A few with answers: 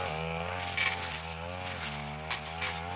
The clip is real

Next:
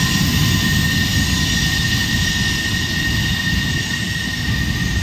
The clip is real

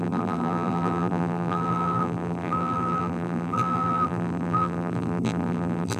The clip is fake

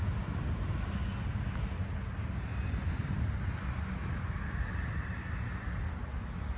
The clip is real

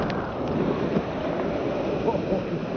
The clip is real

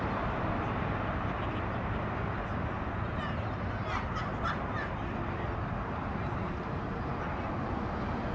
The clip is real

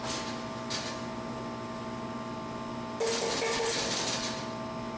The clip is real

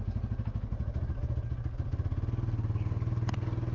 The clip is real